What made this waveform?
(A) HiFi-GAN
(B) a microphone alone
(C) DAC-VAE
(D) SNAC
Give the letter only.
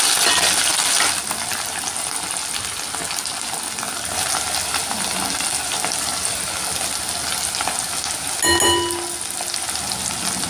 B